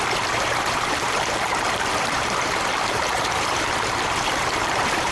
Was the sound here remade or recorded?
remade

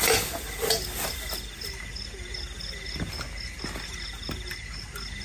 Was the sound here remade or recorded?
recorded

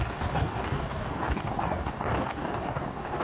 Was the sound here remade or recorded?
remade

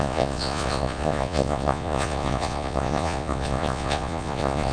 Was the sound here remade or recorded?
remade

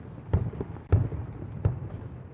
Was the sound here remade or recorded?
recorded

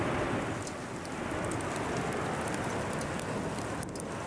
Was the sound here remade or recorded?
recorded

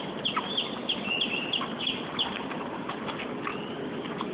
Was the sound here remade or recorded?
recorded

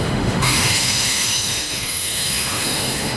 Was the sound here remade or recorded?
remade